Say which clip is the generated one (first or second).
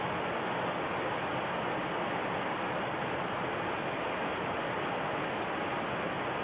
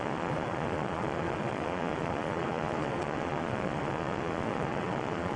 second